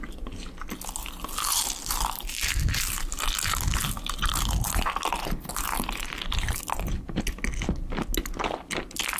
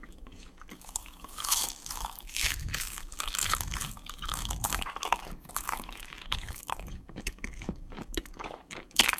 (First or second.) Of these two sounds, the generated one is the second